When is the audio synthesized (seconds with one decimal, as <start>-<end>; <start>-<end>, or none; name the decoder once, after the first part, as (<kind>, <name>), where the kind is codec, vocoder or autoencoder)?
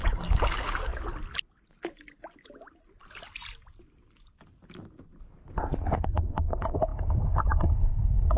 0.0-0.9 (codec, DAC); 5.8-8.4